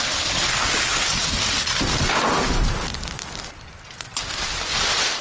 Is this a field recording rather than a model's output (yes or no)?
yes